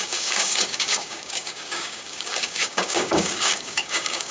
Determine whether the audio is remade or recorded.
remade